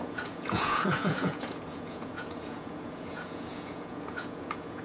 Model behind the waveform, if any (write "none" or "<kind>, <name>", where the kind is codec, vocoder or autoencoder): vocoder, Vocos